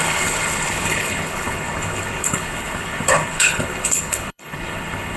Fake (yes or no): yes